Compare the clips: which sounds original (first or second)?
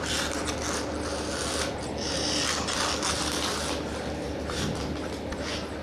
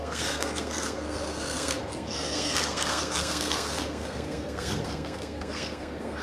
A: first